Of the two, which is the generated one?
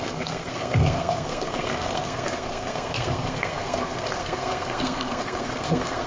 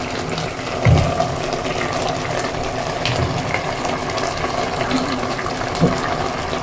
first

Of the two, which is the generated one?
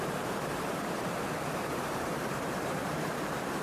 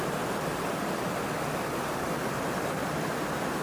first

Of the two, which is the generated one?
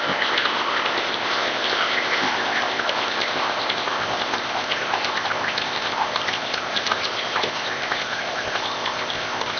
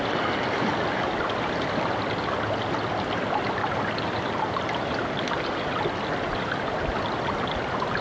first